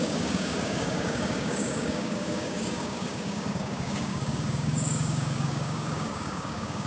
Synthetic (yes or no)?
yes